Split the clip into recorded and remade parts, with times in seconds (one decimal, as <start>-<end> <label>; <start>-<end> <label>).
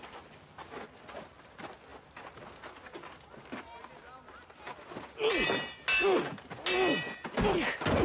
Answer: 0.0-8.0 recorded